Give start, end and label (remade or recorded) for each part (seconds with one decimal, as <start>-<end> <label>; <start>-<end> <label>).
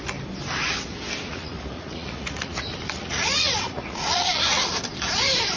0.0-1.3 recorded; 1.3-4.7 remade; 4.7-5.6 recorded